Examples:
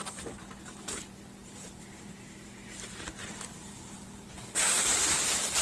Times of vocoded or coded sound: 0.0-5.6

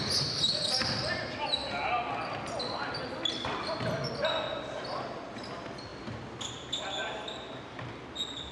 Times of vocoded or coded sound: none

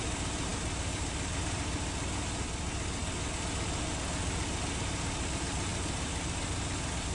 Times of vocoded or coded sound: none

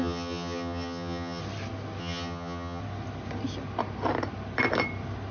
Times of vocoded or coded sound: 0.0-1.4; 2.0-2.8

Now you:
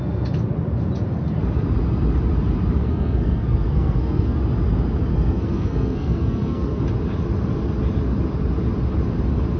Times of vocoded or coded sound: 2.8-4.4; 5.1-6.8